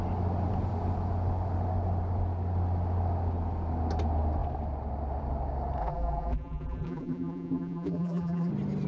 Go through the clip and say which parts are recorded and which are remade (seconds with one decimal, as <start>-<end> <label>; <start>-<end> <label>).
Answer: 0.0-5.8 recorded; 5.8-8.5 remade; 8.5-8.9 recorded